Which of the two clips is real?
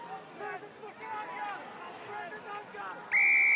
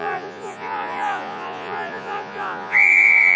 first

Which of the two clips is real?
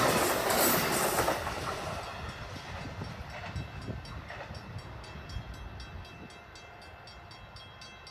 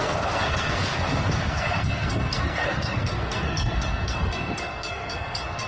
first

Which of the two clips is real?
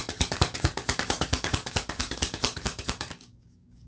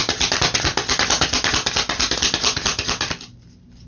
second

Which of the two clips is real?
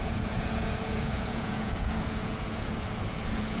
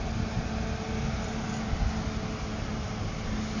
second